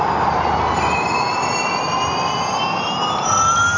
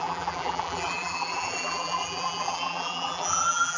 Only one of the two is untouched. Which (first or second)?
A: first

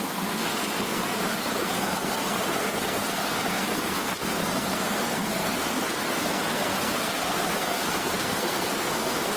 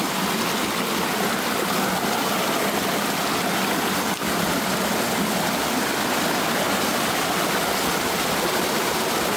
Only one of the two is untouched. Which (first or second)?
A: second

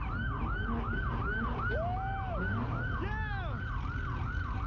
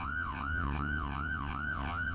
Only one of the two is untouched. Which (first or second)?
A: first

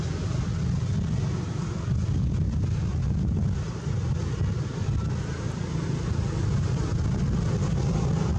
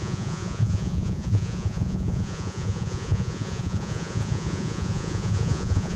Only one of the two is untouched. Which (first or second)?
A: first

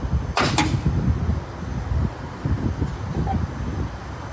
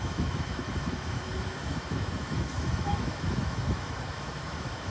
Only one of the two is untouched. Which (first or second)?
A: first